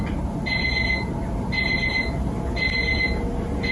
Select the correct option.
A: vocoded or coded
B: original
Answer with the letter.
B